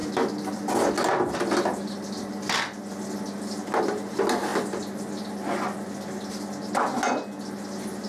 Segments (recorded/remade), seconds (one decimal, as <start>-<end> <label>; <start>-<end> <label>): 0.0-8.1 recorded